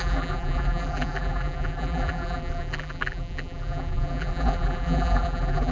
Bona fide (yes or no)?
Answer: no